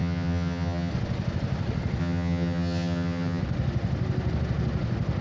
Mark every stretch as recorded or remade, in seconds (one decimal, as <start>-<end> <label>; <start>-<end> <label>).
0.0-0.9 remade; 0.9-2.0 recorded; 2.0-3.4 remade; 3.4-5.2 recorded